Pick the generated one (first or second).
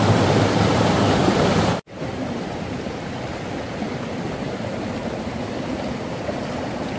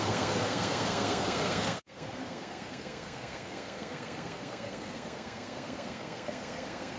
second